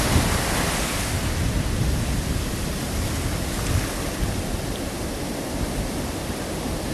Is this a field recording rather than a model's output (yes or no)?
yes